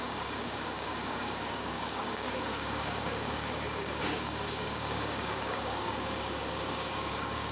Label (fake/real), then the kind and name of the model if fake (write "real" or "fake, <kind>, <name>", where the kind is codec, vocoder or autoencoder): fake, codec, DAC